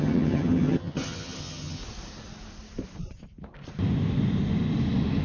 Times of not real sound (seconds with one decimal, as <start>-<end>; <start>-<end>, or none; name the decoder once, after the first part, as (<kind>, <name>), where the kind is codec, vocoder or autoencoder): 0.0-1.8 (vocoder, HiFi-GAN)